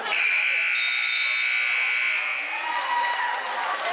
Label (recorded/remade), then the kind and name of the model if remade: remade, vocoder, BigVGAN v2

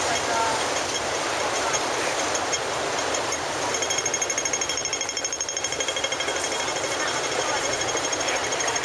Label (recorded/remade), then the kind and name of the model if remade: remade, vocoder, BigVGAN v2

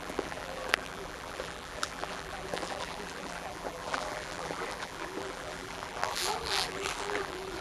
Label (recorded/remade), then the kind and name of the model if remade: remade, vocoder, BigVGAN v2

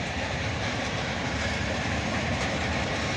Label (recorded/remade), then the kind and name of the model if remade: remade, vocoder, BigVGAN v2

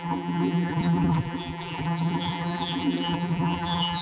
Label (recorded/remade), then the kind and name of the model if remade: remade, vocoder, BigVGAN v2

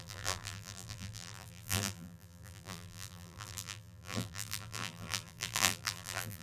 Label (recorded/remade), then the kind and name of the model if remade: remade, vocoder, BigVGAN v2